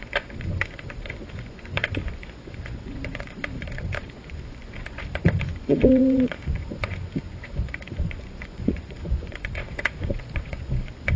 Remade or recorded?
remade